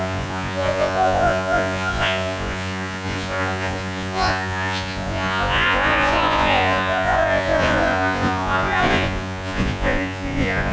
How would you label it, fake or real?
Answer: fake